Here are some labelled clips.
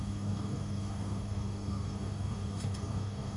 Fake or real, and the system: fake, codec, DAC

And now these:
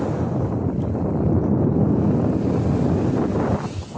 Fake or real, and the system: real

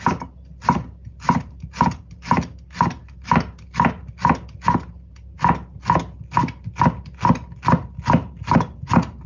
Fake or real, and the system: real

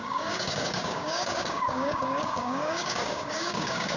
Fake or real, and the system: fake, codec, DAC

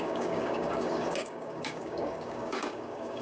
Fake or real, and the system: fake, codec, DAC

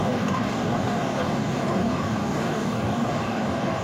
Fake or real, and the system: fake, codec, DAC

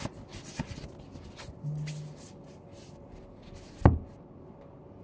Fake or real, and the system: real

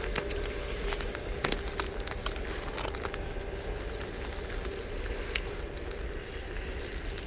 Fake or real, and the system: real